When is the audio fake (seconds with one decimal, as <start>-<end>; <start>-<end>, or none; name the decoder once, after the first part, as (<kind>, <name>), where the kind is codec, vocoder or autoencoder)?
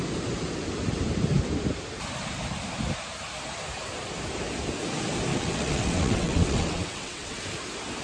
5.3-7.4 (vocoder, WaveNeXt)